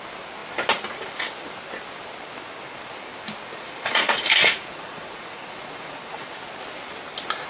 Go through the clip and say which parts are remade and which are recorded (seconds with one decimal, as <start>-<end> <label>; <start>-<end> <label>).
0.0-3.5 recorded; 3.5-6.4 remade; 6.4-7.5 recorded